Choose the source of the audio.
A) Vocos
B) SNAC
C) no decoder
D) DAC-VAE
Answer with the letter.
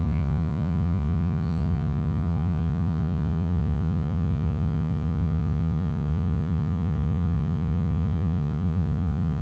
A